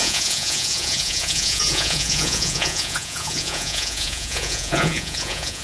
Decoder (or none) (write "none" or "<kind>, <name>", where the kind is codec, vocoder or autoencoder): vocoder, Vocos